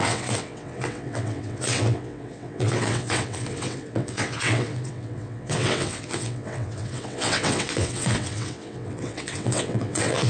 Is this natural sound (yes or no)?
no